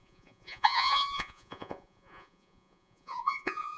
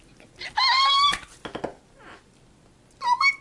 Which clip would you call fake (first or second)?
first